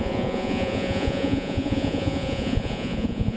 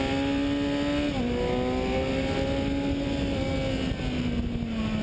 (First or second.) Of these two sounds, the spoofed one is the first